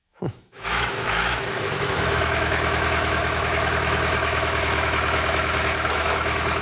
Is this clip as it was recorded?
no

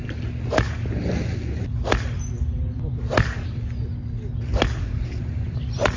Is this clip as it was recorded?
yes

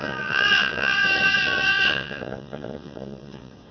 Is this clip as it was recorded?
no